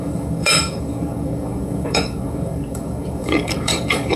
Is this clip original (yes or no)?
no